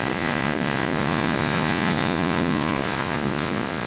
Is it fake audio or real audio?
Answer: fake